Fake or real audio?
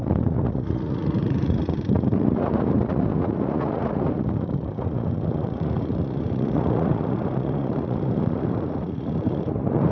fake